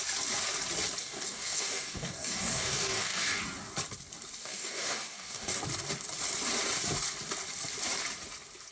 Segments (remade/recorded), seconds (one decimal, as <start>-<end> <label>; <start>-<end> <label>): 0.0-1.0 recorded; 1.0-3.4 remade; 3.4-4.4 recorded; 4.4-5.6 remade; 5.6-8.7 recorded